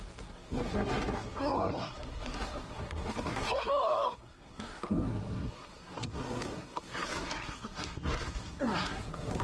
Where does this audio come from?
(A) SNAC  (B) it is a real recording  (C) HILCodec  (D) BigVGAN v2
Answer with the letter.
A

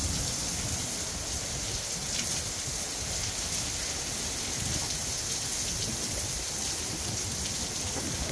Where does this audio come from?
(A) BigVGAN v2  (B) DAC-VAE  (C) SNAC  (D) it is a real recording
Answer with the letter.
D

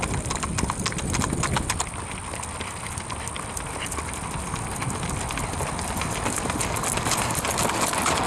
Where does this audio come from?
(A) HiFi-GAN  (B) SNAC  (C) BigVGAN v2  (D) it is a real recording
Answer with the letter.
D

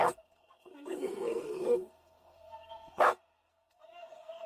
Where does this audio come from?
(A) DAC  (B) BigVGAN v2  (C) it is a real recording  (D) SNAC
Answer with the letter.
D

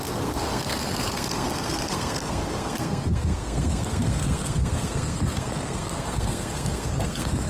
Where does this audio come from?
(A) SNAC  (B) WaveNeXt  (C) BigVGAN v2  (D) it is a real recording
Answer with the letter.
A